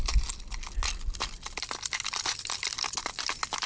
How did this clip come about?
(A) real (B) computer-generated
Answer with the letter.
A